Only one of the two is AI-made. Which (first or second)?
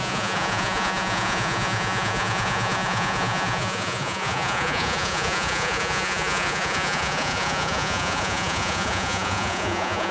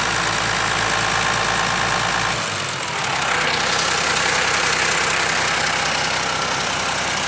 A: first